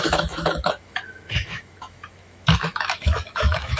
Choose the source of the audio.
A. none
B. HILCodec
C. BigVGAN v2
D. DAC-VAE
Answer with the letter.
D